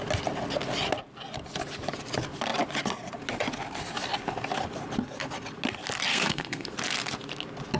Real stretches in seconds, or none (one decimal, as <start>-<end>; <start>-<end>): 0.0-6.1; 6.7-7.8